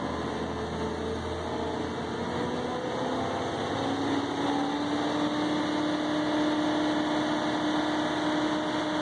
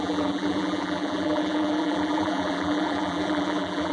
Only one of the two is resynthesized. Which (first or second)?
second